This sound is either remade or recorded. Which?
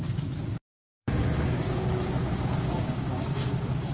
remade